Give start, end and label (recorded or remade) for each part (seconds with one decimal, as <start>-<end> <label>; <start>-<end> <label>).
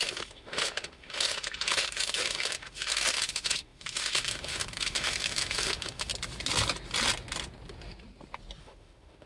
0.0-6.1 remade; 6.1-8.6 recorded; 8.6-9.3 remade